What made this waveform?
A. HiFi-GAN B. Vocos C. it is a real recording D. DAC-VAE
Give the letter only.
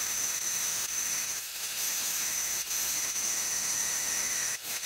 D